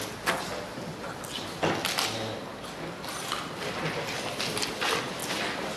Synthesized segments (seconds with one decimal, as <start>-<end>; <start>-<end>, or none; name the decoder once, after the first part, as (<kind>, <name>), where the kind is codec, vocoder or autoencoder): none